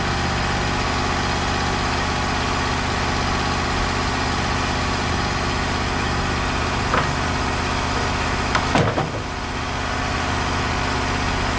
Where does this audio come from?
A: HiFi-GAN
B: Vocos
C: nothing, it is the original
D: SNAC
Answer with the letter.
C